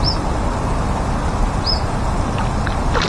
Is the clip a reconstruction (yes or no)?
no